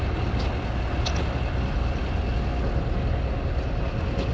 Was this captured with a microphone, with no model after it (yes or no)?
yes